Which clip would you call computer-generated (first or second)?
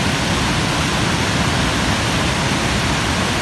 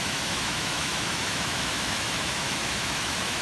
second